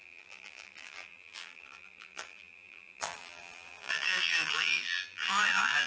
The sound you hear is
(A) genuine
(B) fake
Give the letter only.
B